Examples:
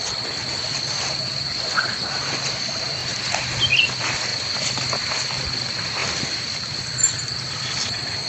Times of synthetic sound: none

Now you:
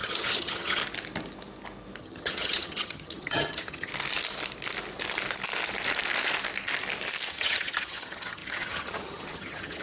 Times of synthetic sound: 0.0-0.8; 2.0-3.9; 7.3-9.8

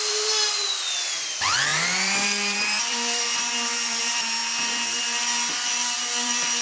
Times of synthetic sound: 0.0-6.6

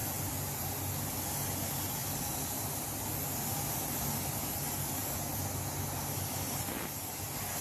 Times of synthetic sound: none

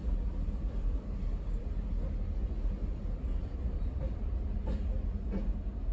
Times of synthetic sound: 0.0-1.7; 3.2-4.7

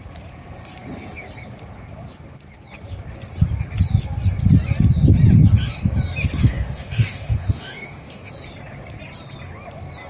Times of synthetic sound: 6.4-8.3

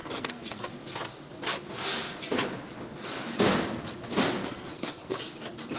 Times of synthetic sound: 0.0-0.7; 4.4-5.2

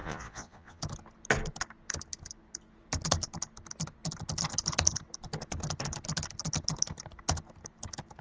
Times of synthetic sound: 0.0-0.8